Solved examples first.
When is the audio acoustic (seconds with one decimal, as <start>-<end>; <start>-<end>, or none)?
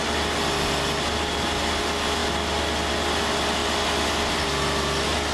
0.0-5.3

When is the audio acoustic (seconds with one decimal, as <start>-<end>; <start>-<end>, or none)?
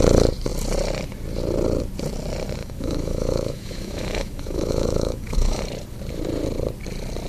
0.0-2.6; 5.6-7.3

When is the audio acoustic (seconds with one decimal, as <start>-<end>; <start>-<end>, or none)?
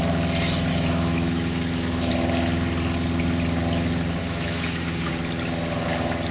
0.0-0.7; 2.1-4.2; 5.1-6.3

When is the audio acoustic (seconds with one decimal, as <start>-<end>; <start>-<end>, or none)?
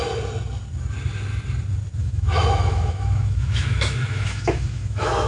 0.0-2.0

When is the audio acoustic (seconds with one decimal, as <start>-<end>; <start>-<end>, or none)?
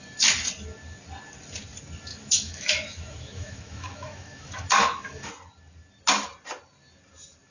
0.0-2.1; 5.3-7.5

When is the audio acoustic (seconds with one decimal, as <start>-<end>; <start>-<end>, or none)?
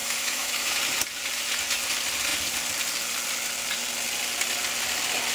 0.8-5.3